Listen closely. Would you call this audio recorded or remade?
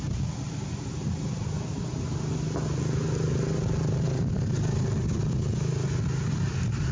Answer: recorded